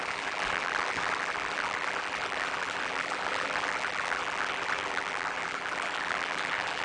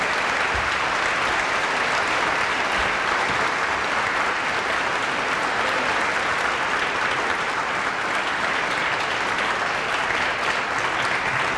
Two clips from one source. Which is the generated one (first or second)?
first